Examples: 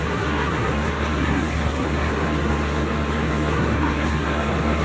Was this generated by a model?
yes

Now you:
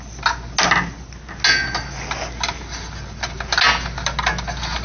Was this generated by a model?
no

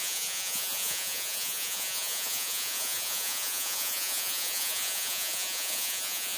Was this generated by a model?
yes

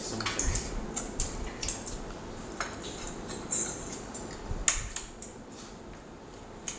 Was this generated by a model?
no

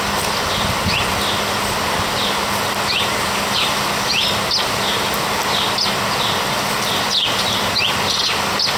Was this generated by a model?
no